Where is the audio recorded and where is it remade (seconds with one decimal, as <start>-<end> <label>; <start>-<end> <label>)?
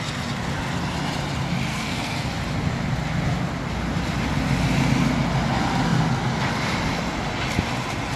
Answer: 0.0-1.7 recorded; 1.7-2.3 remade; 2.3-8.2 recorded